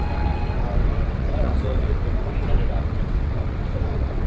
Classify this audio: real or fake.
fake